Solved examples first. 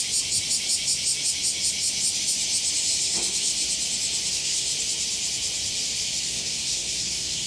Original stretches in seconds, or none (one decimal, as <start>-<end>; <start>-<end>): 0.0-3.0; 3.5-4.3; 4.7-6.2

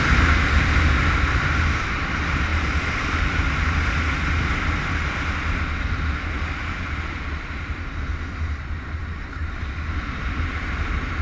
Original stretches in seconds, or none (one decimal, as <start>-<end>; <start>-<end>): 0.0-11.2

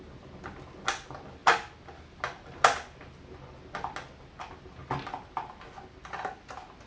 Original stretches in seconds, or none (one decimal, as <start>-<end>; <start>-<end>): 0.0-6.9